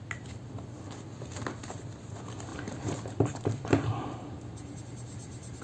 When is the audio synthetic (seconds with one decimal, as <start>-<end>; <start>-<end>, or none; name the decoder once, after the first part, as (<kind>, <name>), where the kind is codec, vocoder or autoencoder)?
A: 1.6-2.1 (vocoder, BigVGAN v2); 2.5-5.6